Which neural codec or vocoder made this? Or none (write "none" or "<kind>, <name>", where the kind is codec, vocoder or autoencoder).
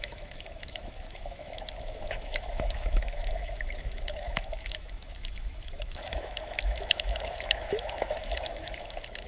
autoencoder, DAC-VAE